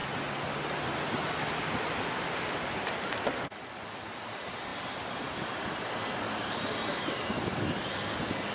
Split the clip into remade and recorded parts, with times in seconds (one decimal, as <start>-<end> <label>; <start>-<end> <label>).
0.0-8.5 recorded